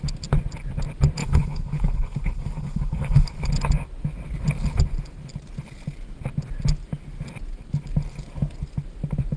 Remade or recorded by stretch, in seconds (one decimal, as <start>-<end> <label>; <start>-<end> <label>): 0.0-1.2 recorded; 1.2-3.5 remade; 3.5-9.4 recorded